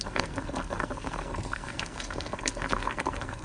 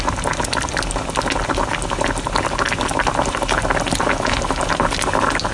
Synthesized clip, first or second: first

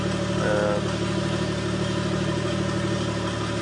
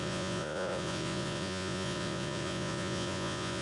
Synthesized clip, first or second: second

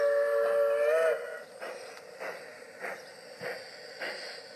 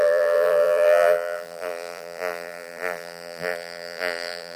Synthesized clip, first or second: second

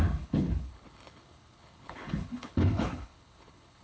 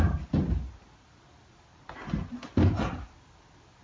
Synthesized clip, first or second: first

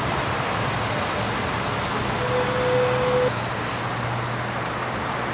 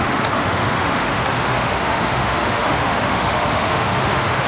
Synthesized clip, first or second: second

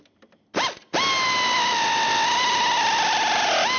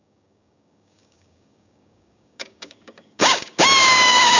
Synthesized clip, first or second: second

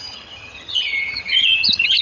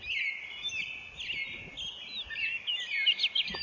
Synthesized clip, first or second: first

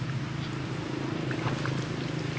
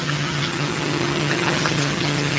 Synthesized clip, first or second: second